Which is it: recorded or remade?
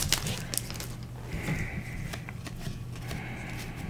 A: recorded